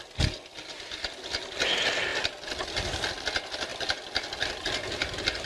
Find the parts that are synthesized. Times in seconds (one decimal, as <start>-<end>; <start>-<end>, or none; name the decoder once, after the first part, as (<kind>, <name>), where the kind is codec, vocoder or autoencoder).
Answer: none